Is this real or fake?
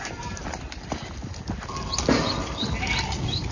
real